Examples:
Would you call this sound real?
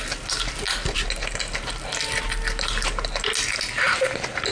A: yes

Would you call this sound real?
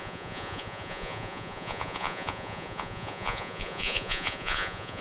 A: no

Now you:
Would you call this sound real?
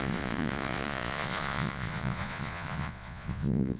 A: no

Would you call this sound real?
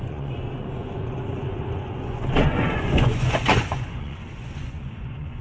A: no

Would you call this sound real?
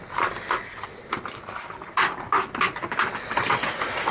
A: yes